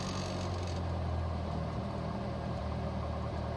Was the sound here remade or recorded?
recorded